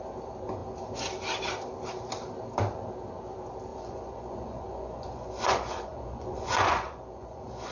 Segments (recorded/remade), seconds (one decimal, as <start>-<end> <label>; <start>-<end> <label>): 0.0-3.7 recorded; 3.7-7.7 remade